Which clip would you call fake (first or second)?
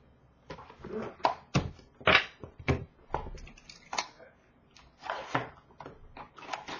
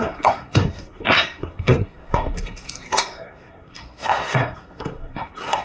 second